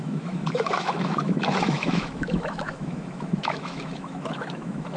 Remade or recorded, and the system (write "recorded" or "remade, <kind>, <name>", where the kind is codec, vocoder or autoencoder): remade, autoencoder, DAC-VAE